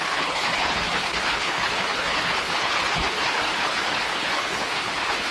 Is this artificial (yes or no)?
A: yes